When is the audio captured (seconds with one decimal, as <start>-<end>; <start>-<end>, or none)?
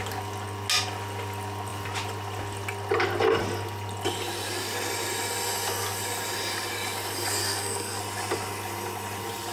0.0-7.4; 8.0-9.5